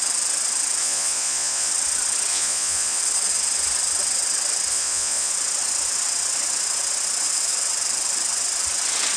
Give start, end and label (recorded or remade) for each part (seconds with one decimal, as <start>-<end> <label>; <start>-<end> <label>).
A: 0.0-0.8 recorded; 0.8-1.7 remade; 1.7-2.3 recorded; 2.3-3.0 remade; 3.0-4.7 recorded; 4.7-5.3 remade; 5.3-9.2 recorded